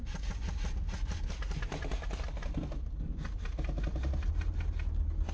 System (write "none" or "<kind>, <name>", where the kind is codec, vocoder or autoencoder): none